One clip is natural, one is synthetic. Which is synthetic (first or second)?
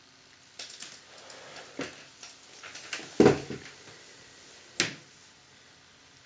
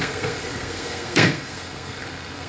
second